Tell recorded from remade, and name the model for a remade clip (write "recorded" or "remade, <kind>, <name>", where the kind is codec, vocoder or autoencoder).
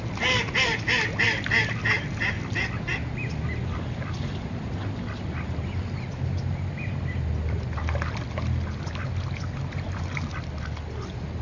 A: recorded